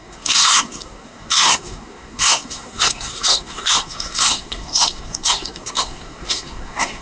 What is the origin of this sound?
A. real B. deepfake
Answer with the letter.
B